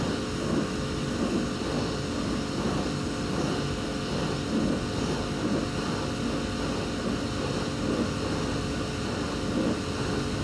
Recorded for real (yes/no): yes